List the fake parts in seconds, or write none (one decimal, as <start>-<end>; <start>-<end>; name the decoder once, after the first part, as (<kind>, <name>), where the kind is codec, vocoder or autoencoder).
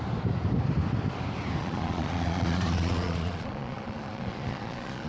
1.6-5.1 (vocoder, Vocos)